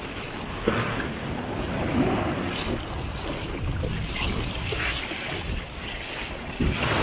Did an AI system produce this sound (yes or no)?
no